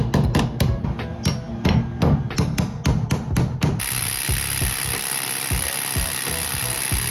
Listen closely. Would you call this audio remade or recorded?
recorded